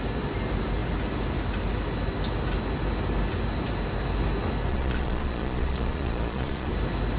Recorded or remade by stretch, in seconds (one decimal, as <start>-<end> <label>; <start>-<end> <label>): 0.0-4.7 recorded; 4.7-6.7 remade; 6.7-7.2 recorded